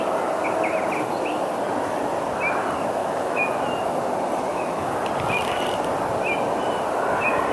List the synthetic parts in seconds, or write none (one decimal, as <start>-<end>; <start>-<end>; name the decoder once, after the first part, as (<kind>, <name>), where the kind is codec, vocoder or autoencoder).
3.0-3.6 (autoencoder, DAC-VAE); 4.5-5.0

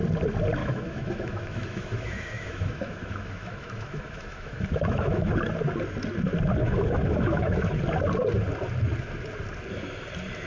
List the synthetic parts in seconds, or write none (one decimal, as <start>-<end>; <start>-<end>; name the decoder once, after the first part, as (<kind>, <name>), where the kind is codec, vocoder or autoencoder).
0.6-5.3 (autoencoder, DAC-VAE); 6.6-7.8

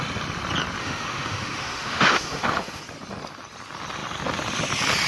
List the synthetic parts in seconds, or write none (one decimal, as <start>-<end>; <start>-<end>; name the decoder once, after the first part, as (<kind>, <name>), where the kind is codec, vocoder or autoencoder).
0.8-2.8 (autoencoder, DAC-VAE)

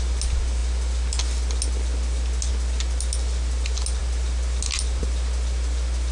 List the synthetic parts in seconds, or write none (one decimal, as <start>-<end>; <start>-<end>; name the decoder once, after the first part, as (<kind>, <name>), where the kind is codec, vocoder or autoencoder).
none

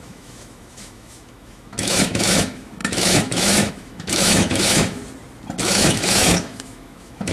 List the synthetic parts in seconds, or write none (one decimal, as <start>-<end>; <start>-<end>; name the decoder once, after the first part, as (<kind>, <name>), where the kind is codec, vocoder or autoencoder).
0.0-5.0 (autoencoder, DAC-VAE); 5.6-7.3